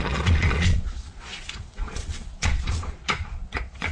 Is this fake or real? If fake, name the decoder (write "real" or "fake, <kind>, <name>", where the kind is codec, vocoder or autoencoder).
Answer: fake, vocoder, Vocos